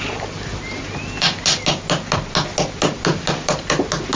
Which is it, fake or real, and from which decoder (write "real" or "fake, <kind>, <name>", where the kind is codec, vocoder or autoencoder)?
real